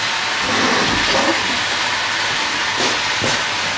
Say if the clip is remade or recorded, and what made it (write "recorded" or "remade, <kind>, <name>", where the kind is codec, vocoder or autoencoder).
recorded